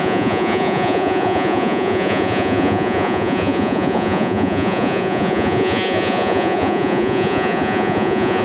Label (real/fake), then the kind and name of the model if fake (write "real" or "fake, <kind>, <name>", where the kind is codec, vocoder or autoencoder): fake, vocoder, Vocos